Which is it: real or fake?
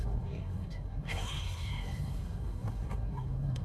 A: fake